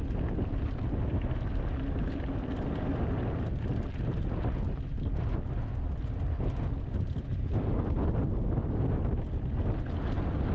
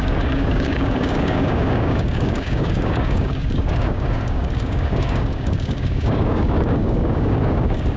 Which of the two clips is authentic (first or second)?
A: first